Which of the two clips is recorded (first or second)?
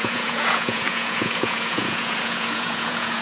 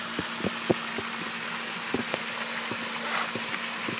second